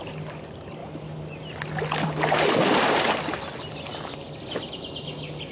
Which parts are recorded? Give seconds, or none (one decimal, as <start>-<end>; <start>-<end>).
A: 0.0-5.5